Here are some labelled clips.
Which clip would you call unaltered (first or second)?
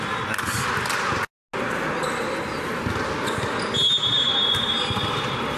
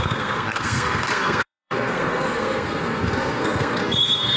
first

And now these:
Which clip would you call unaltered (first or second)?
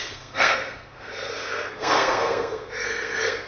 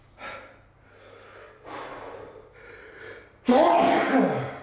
second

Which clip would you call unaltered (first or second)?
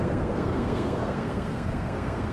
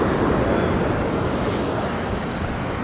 second